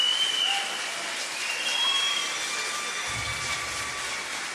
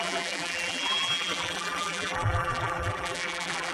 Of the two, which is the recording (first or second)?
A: first